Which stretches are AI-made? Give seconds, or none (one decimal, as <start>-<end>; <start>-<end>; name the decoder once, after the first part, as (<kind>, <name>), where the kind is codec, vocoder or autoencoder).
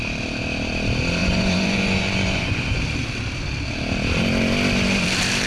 1.2-2.8 (vocoder, Vocos)